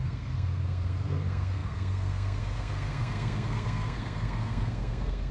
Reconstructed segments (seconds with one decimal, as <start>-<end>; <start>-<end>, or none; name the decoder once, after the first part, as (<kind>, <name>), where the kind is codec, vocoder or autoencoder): 0.0-5.3 (codec, SNAC)